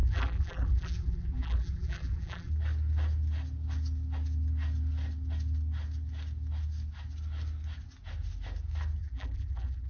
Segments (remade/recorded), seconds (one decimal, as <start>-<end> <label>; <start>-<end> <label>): 0.0-2.5 remade; 2.5-9.0 recorded; 9.0-9.9 remade